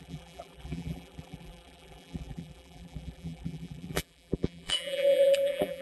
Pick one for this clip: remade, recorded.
remade